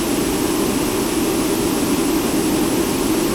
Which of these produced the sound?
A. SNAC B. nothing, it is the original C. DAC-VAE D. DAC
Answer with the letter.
B